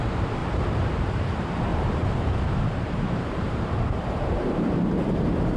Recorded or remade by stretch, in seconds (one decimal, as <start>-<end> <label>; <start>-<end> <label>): 0.0-5.6 remade